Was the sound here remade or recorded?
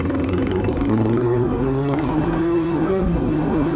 remade